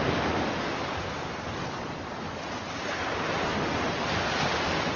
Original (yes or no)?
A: yes